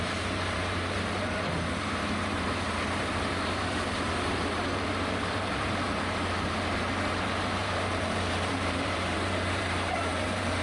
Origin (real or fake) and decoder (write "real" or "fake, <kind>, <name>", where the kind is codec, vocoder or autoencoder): fake, vocoder, BigVGAN v2